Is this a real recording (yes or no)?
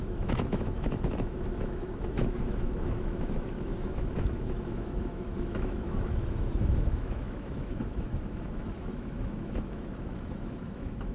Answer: no